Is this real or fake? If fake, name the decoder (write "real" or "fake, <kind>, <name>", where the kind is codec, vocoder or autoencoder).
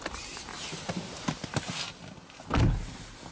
real